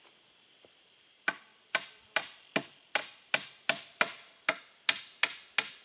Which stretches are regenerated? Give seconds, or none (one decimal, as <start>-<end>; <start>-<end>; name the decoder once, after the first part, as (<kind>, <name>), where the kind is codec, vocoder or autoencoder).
none